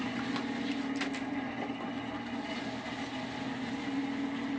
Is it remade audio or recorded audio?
recorded